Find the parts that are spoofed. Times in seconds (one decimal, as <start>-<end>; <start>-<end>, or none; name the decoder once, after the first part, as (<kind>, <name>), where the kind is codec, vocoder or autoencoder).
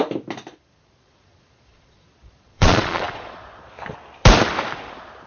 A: 0.5-3.7 (vocoder, Vocos)